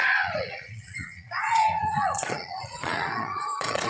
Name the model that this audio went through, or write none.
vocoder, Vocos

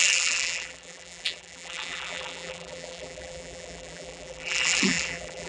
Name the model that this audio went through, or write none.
vocoder, BigVGAN v2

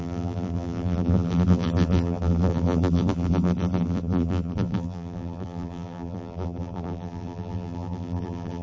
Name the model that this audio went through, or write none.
vocoder, BigVGAN v2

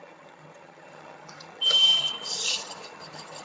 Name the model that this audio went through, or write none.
vocoder, HiFi-GAN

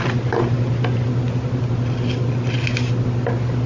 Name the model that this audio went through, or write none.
none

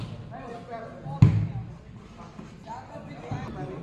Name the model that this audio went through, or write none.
none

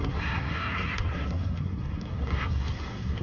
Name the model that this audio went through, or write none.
codec, SNAC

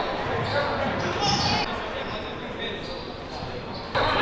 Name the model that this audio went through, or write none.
none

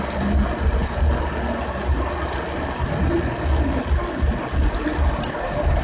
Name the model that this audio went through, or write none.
none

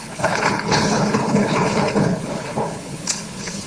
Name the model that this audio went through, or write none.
codec, HILCodec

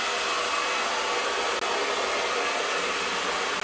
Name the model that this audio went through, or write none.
none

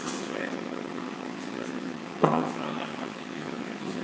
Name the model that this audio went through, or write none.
vocoder, HiFi-GAN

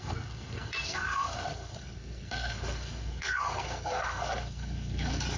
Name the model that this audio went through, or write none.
codec, SNAC